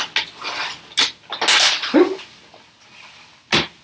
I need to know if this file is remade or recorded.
recorded